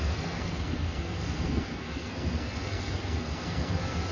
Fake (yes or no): yes